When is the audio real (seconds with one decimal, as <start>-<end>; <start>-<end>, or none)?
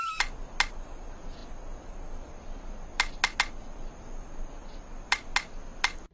0.0-6.1